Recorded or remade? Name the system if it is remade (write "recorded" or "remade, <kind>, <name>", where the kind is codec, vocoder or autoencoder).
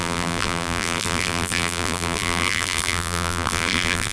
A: remade, vocoder, BigVGAN v2